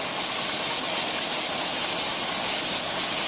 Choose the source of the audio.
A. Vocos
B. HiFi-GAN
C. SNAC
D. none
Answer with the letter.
D